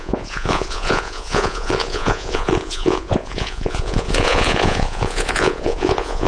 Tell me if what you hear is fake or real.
fake